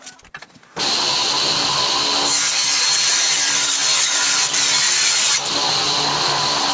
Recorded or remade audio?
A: recorded